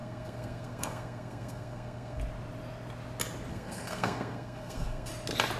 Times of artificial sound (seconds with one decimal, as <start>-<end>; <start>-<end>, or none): 0.0-2.2; 3.5-5.1